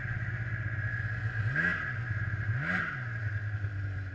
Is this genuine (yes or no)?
yes